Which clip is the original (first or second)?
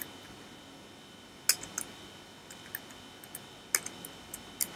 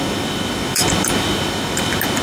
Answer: first